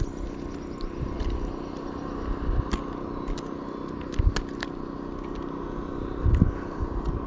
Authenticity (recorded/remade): recorded